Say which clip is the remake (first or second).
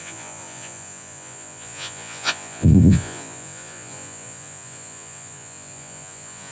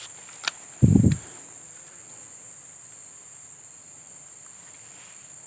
first